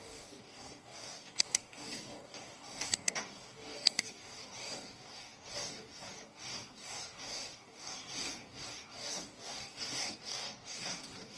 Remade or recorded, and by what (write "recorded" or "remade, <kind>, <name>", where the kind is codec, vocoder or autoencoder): remade, codec, DAC